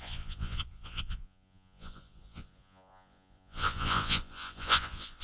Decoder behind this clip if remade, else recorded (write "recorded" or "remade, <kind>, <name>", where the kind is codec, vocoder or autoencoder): remade, vocoder, Vocos